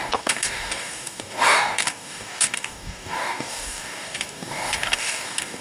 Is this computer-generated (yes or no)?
yes